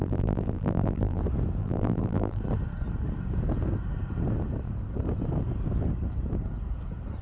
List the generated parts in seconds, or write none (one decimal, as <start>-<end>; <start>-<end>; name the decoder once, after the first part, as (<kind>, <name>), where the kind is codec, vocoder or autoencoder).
0.0-1.2 (vocoder, BigVGAN v2); 1.6-2.4